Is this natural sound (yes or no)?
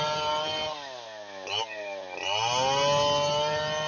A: yes